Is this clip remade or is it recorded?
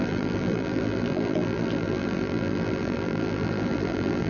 remade